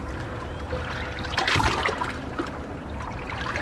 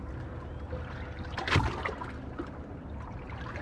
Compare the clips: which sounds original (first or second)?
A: second